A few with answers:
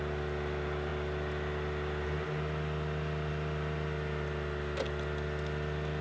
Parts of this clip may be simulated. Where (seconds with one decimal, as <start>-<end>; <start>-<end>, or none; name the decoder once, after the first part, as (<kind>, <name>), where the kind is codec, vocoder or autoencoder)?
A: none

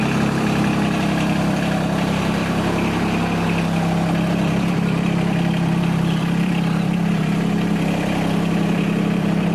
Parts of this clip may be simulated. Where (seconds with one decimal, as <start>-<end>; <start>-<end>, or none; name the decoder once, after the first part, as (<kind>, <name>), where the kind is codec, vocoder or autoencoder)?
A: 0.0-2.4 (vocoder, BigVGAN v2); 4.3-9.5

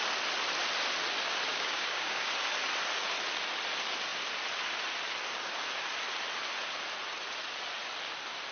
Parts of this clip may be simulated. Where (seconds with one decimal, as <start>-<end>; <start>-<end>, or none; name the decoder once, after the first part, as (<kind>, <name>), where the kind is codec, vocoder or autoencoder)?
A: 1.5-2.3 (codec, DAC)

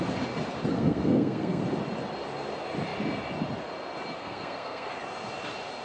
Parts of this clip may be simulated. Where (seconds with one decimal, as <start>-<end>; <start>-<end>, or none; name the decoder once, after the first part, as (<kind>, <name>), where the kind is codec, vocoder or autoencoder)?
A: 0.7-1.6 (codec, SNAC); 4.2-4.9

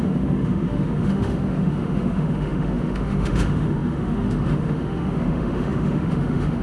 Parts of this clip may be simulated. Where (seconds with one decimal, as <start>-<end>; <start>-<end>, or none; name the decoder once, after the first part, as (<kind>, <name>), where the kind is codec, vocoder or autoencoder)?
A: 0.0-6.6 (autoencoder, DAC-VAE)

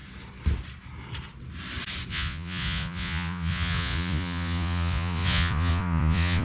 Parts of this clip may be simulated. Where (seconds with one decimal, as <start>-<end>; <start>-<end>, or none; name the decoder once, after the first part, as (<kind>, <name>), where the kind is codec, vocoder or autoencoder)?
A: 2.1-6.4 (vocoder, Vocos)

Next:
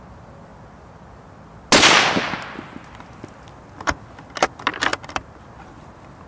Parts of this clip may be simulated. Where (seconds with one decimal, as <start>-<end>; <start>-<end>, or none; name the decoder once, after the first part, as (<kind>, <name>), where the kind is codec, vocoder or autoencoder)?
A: none